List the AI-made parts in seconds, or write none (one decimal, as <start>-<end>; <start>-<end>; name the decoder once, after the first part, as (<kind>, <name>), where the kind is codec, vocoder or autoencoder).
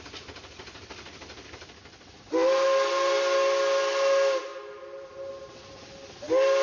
none